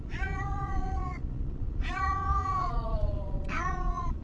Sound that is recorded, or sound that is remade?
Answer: remade